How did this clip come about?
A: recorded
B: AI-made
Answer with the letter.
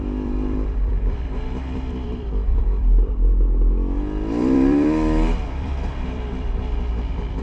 B